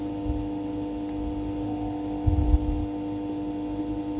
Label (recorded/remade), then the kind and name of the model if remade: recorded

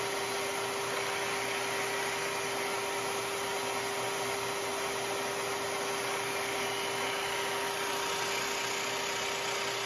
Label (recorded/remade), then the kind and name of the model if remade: recorded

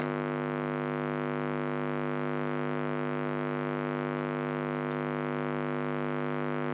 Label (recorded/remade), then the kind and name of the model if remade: recorded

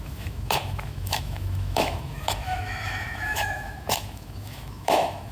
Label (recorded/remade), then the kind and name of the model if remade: remade, autoencoder, DAC-VAE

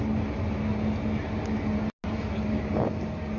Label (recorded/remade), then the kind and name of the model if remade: recorded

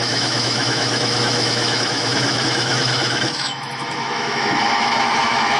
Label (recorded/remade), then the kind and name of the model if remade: remade, autoencoder, DAC-VAE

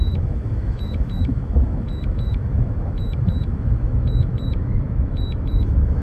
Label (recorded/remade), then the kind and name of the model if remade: remade, autoencoder, DAC-VAE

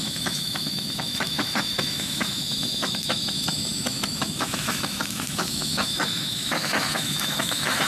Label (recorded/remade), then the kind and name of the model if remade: remade, autoencoder, DAC-VAE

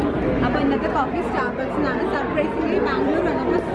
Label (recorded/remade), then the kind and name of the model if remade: recorded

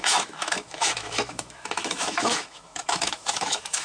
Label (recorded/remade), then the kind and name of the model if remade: remade, autoencoder, DAC-VAE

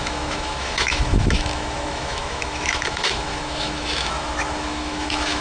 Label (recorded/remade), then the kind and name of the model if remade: remade, autoencoder, DAC-VAE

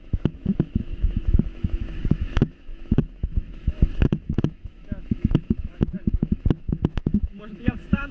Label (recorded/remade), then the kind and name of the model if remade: remade, autoencoder, DAC-VAE